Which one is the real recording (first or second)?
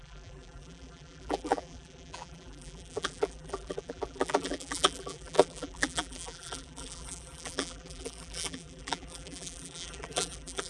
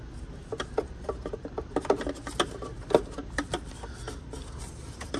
second